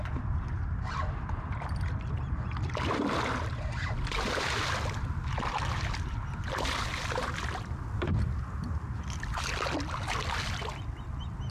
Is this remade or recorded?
recorded